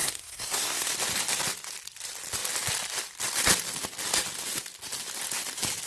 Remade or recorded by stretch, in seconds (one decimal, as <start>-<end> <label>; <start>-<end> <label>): 0.0-0.9 remade; 0.9-5.9 recorded